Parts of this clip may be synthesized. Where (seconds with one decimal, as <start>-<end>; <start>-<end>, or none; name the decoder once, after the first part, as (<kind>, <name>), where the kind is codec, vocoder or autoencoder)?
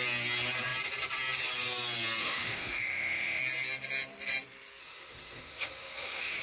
2.2-3.4 (autoencoder, DAC-VAE); 4.8-6.4